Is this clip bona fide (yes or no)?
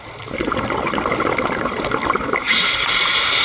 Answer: yes